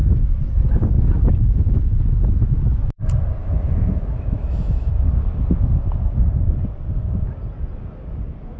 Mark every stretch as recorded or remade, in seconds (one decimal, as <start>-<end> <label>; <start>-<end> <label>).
0.0-3.4 recorded; 3.4-4.9 remade; 4.9-8.6 recorded